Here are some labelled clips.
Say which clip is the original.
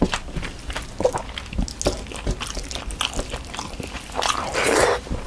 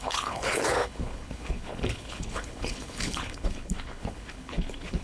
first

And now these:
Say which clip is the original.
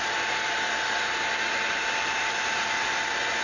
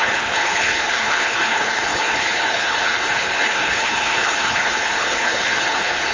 first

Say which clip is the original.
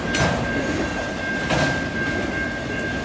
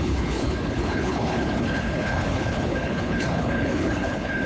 first